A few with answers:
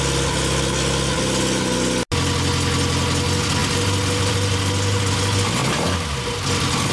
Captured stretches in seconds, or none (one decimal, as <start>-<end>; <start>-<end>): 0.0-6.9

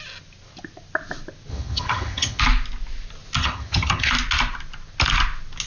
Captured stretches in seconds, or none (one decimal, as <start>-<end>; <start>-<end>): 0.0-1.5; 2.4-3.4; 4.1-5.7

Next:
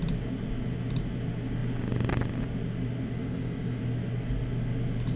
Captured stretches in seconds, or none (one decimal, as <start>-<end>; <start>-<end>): 0.0-3.2; 3.8-5.2